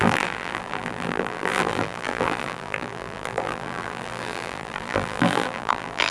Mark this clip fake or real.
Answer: fake